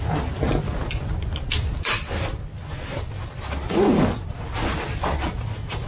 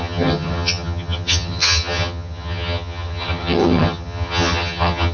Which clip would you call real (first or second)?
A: first